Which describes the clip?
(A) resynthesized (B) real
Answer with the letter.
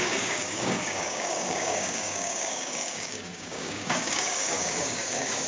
A